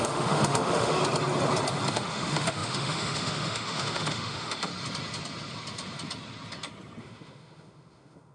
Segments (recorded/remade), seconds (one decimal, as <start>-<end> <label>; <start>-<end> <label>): 0.0-1.0 remade; 1.0-1.9 recorded; 1.9-4.7 remade; 4.7-7.0 recorded; 7.0-8.3 remade